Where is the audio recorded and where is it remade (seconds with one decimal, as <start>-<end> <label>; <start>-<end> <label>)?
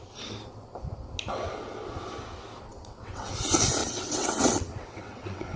0.0-2.7 recorded; 2.7-3.3 remade; 3.3-3.8 recorded; 3.8-5.6 remade